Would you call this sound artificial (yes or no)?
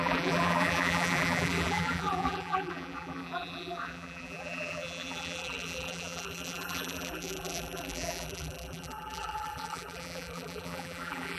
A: yes